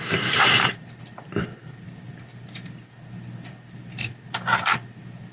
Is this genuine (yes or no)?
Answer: yes